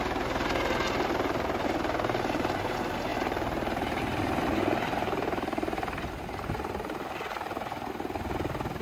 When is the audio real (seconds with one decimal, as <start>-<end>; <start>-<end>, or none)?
0.0-8.8